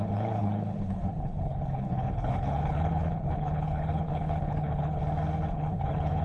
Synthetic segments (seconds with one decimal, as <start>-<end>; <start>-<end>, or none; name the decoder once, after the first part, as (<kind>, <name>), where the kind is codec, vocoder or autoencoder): 0.0-5.0 (codec, HILCodec); 5.5-6.2